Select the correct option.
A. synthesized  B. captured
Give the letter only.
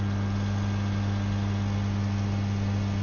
B